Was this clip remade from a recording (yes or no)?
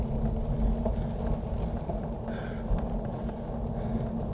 no